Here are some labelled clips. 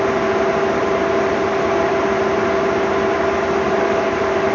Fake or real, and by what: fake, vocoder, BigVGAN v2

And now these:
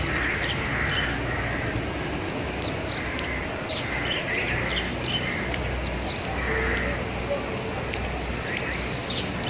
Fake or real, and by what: real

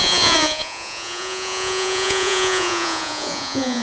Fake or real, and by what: fake, vocoder, Vocos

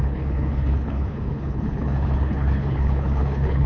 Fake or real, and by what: fake, codec, HILCodec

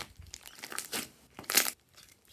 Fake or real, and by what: fake, vocoder, BigVGAN v2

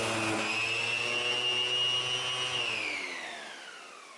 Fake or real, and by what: real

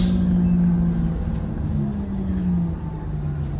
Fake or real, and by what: real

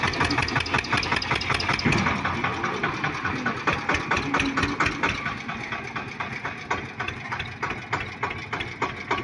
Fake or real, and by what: real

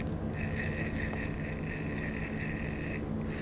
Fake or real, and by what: real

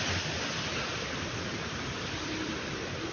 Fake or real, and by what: fake, vocoder, BigVGAN v2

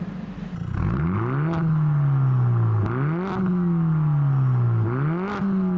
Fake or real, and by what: real